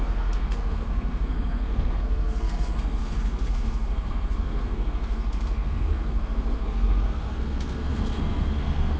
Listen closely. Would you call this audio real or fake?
fake